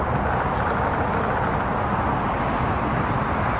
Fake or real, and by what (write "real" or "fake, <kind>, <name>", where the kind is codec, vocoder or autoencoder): real